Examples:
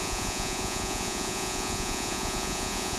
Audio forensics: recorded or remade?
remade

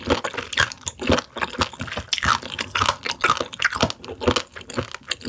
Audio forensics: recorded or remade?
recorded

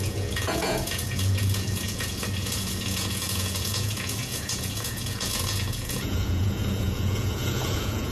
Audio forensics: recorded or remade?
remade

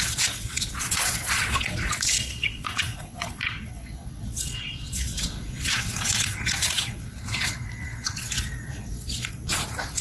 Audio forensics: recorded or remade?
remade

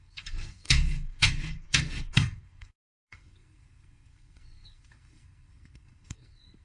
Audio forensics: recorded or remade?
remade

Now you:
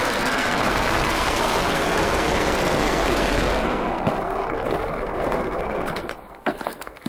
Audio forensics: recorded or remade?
remade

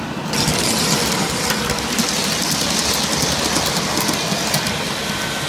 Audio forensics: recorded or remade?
recorded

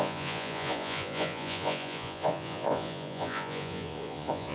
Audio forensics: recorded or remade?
remade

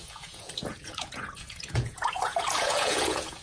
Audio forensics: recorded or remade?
remade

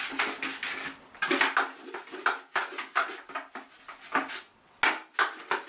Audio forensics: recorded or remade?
recorded